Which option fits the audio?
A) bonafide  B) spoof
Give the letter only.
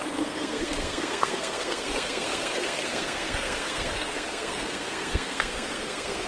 B